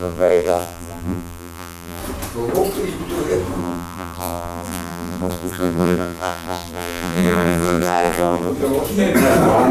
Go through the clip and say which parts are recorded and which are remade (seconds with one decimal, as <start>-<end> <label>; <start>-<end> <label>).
0.0-2.0 remade; 2.0-3.6 recorded; 3.6-8.5 remade; 8.5-9.7 recorded

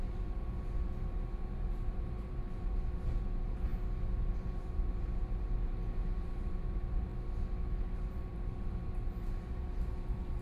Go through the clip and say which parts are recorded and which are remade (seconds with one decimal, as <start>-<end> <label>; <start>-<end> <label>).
0.0-7.1 remade; 7.1-7.8 recorded; 7.8-10.4 remade